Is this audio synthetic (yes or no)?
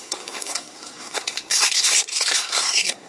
yes